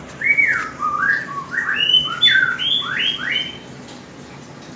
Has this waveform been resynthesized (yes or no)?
no